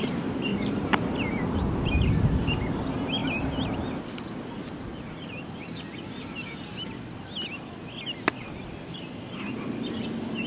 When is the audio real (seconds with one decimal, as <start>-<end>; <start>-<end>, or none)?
0.0-0.5; 1.0-10.5